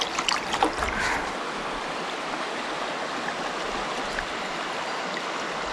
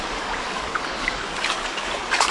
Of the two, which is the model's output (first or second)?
second